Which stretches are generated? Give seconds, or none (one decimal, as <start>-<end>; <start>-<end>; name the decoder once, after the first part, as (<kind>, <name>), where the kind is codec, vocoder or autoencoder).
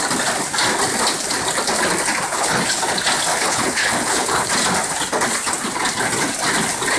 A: 2.3-2.8 (codec, HILCodec); 3.3-4.5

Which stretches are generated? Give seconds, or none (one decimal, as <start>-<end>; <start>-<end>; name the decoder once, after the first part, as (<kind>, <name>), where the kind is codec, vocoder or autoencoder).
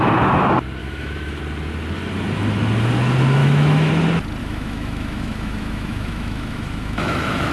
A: 0.8-1.4 (autoencoder, DAC-VAE); 3.4-3.9; 4.4-7.5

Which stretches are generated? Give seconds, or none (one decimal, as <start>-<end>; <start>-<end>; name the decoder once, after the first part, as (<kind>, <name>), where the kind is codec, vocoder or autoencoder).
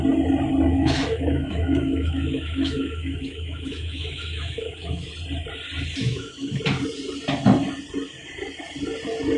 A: 0.7-5.1 (autoencoder, DAC-VAE); 6.0-6.6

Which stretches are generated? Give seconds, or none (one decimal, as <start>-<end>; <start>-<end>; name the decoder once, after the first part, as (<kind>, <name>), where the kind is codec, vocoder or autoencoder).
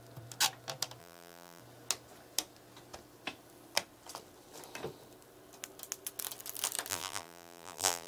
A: 1.0-1.6 (vocoder, BigVGAN v2); 6.9-8.1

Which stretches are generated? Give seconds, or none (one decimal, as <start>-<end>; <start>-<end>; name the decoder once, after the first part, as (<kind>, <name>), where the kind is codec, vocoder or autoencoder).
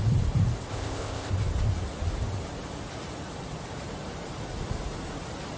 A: 0.7-1.3 (codec, ZipCodec)